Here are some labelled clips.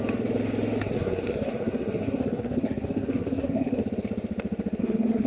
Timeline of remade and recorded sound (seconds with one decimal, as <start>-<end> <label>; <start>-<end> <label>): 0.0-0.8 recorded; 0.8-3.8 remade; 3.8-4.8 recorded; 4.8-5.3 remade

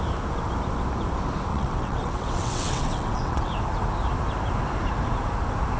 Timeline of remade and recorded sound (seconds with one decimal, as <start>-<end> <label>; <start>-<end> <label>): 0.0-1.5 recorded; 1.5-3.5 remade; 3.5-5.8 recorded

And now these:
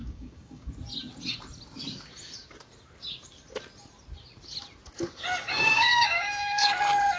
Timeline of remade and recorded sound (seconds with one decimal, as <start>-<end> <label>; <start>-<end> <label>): 0.0-0.7 remade; 0.7-5.5 recorded; 5.5-6.7 remade; 6.7-7.2 recorded

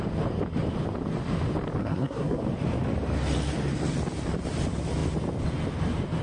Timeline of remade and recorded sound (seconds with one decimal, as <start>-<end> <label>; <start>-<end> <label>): 0.0-1.8 recorded; 1.8-2.4 remade; 2.4-6.2 recorded